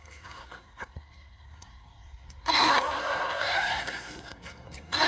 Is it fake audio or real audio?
fake